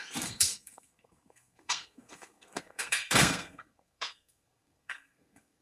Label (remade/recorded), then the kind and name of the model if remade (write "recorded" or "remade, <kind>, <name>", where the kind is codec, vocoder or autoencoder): remade, codec, SNAC